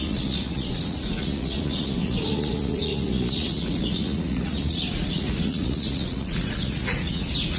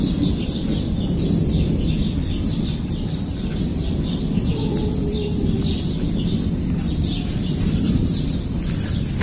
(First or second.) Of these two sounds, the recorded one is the second